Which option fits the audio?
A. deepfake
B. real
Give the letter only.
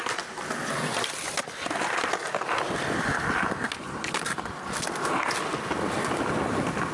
B